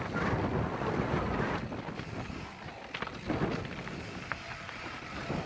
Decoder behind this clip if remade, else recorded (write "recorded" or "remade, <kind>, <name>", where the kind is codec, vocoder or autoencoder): recorded